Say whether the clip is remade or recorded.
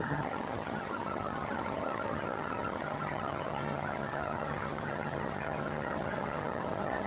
remade